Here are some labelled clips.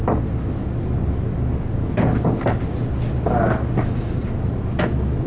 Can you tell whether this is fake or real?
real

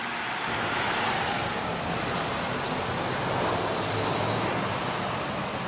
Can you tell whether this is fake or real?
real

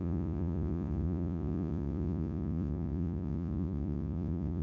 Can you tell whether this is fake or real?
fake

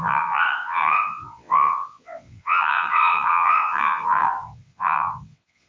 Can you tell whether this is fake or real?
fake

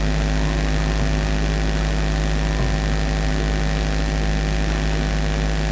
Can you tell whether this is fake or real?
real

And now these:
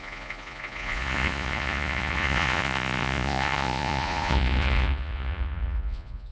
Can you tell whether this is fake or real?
fake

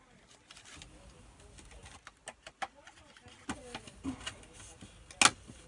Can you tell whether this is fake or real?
real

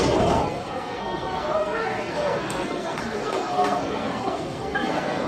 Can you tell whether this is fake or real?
fake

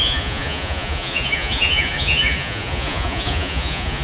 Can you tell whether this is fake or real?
fake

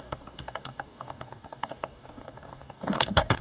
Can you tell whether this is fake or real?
fake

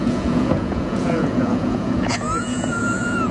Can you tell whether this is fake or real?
fake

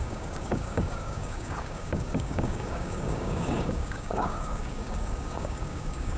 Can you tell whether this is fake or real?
fake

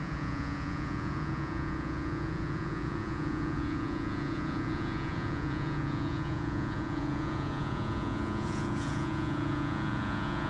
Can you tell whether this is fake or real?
fake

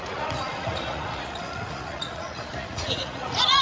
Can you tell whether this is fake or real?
fake